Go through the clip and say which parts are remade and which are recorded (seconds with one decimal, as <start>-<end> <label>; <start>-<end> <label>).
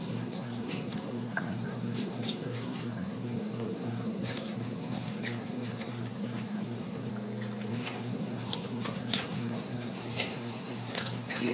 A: 0.0-7.1 remade; 7.1-7.7 recorded; 7.7-11.5 remade